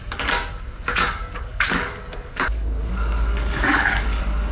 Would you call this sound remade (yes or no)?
yes